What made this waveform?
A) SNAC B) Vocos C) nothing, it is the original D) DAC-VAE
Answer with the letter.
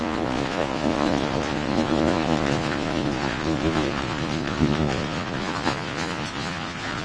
B